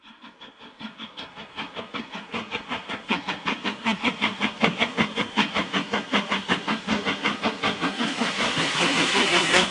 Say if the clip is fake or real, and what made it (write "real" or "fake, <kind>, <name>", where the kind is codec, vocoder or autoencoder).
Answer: fake, codec, SNAC